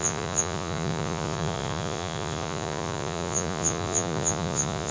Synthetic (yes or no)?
yes